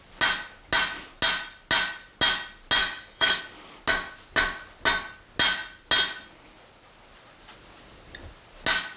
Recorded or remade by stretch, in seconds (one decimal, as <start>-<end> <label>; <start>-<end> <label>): 0.0-2.8 recorded; 2.8-3.4 remade; 3.4-9.0 recorded